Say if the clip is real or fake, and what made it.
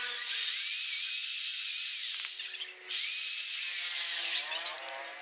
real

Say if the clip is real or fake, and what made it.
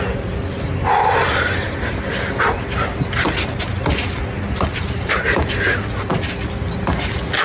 real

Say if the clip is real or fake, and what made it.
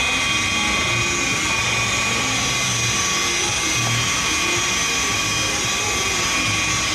real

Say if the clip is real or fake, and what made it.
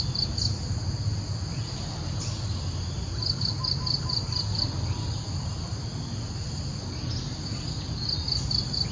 real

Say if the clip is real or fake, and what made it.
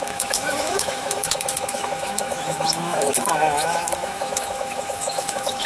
fake, autoencoder, DAC-VAE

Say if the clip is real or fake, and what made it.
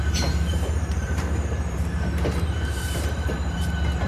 fake, vocoder, BigVGAN v2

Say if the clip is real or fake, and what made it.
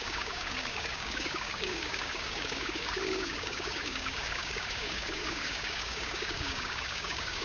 fake, codec, DAC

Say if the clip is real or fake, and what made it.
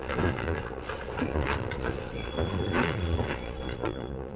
fake, vocoder, Vocos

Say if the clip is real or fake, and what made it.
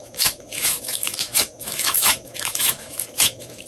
fake, autoencoder, DAC-VAE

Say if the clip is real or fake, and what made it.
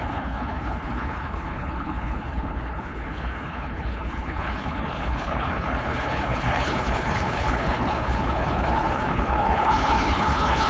fake, codec, HILCodec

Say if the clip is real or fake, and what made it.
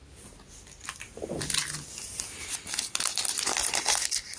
real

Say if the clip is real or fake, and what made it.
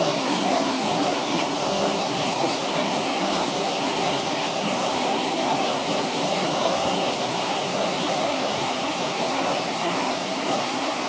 fake, codec, SNAC